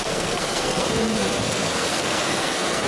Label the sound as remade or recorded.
remade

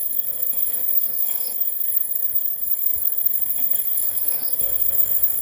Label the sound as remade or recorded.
remade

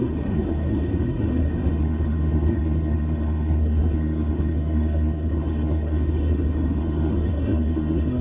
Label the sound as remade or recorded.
remade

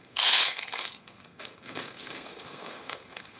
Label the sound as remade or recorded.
remade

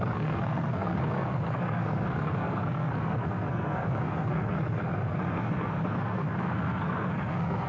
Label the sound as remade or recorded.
remade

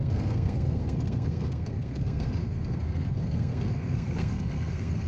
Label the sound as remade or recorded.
remade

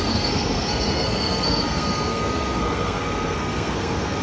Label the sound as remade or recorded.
remade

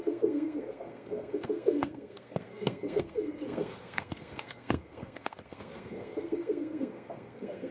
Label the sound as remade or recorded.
remade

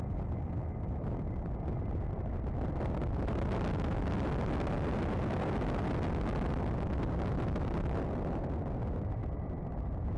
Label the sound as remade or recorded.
recorded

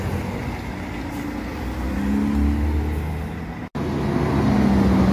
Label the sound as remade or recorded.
recorded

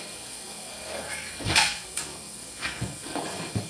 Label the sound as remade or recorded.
remade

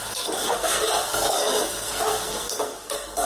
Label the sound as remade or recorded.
remade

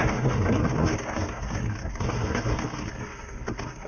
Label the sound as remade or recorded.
remade